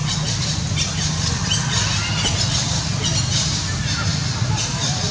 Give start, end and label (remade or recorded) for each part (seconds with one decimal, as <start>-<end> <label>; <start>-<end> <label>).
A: 0.0-4.1 recorded; 4.1-5.1 remade